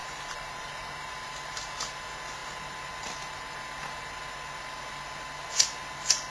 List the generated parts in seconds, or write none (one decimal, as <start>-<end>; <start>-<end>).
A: 0.0-1.3